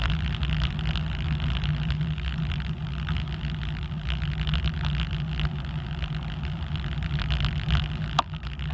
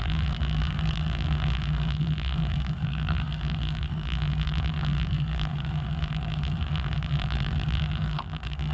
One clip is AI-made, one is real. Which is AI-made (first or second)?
second